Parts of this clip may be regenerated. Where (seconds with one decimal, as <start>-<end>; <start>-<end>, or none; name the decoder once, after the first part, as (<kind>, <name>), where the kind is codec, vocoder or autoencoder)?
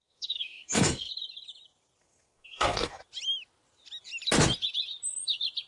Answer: 0.0-1.1 (codec, SNAC); 2.0-3.0